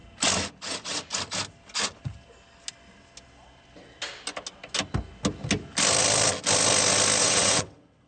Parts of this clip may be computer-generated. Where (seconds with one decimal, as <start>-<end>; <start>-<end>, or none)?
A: 7.2-8.1

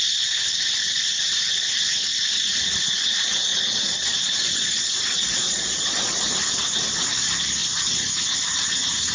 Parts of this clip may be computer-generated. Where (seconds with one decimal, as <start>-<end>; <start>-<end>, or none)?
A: 2.8-6.2

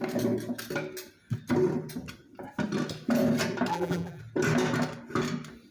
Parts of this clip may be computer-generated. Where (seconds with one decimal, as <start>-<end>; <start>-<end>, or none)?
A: 3.7-4.2

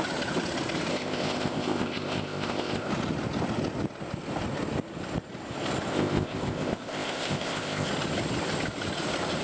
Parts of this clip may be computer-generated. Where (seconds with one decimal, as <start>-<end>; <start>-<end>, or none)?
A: 0.9-2.9; 5.9-7.9